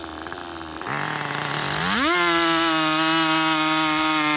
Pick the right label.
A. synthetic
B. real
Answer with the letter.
B